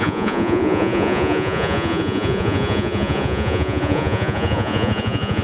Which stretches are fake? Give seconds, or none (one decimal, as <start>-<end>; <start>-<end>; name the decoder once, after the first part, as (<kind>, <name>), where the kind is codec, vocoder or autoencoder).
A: 0.0-5.4 (vocoder, Vocos)

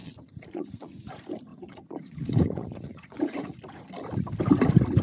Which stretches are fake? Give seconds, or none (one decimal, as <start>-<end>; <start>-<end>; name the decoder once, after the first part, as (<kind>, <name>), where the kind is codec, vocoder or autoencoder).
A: 0.0-1.1 (vocoder, Vocos); 1.5-3.6

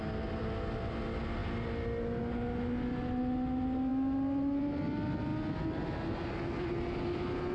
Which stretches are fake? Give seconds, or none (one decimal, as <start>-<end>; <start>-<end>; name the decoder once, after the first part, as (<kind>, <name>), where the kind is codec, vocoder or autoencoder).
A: none

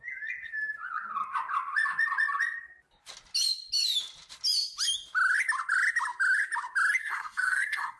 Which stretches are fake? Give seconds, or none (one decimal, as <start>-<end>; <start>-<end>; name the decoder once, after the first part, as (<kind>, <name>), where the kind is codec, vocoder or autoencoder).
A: 7.0-8.0 (codec, SNAC)

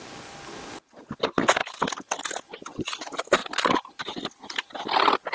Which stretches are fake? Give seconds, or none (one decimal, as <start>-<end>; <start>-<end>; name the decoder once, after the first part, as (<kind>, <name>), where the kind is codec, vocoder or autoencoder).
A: 3.4-4.0 (vocoder, BigVGAN v2)

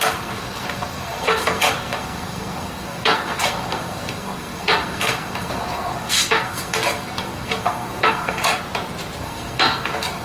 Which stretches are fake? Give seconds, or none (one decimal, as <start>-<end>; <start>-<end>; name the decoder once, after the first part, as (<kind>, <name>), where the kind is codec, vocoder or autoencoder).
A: 0.0-8.5 (codec, SNAC); 9.2-10.2